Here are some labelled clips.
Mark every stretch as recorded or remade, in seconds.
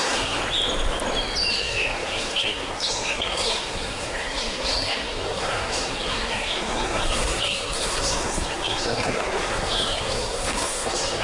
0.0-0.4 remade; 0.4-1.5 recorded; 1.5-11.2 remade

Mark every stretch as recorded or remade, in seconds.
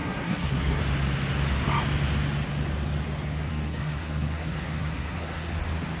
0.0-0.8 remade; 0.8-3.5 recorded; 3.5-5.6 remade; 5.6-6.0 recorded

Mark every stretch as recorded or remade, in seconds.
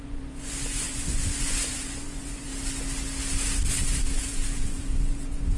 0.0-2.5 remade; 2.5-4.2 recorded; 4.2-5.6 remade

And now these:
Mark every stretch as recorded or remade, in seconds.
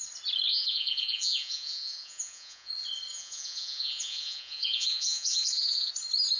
0.0-0.5 recorded; 0.5-2.7 remade; 2.7-3.1 recorded; 3.1-5.9 remade; 5.9-6.4 recorded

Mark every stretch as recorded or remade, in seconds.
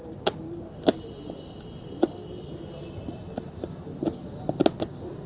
0.0-5.3 recorded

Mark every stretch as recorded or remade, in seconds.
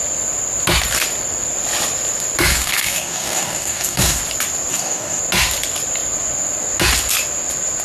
0.0-2.5 recorded; 2.5-4.2 remade; 4.2-4.7 recorded; 4.7-5.2 remade; 5.2-7.8 recorded